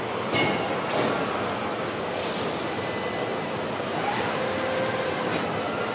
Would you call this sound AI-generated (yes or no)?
no